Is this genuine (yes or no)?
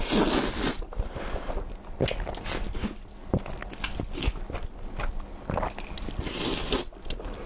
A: yes